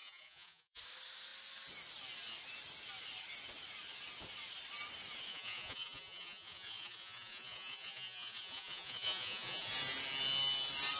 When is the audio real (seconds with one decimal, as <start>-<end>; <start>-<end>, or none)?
0.8-5.3; 9.7-11.0